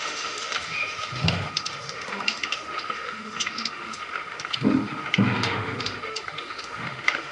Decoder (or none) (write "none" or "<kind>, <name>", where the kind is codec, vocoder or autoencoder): autoencoder, DAC-VAE